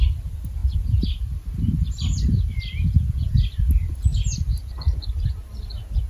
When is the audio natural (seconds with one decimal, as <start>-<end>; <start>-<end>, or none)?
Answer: 0.0-6.1